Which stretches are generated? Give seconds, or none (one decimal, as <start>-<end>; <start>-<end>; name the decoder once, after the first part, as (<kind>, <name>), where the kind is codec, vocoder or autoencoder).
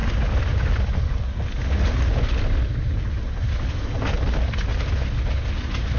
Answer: none